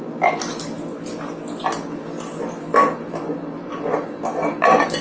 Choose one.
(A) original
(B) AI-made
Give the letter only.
A